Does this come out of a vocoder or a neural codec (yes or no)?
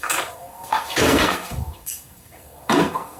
yes